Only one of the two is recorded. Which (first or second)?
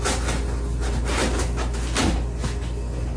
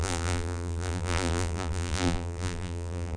first